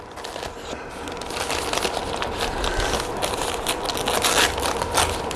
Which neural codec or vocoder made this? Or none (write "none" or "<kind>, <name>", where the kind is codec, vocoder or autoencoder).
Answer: none